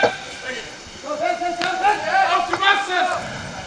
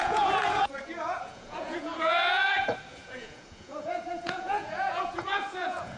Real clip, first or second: first